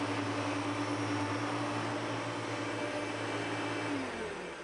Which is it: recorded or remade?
recorded